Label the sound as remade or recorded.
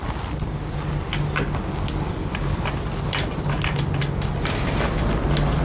recorded